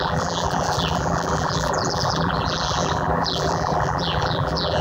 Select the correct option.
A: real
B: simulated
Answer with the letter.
B